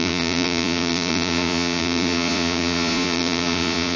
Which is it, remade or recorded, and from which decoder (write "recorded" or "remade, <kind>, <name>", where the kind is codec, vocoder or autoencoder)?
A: remade, vocoder, Vocos